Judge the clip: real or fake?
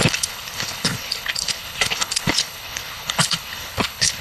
fake